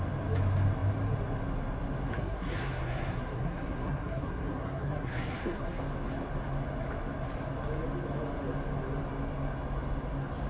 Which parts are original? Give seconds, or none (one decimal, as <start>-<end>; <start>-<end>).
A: 0.0-2.1; 5.8-10.5